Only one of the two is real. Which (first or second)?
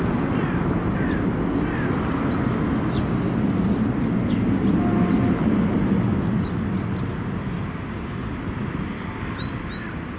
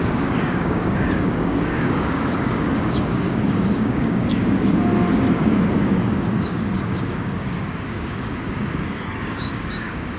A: first